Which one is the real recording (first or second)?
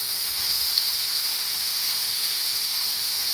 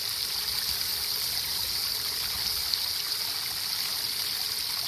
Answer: second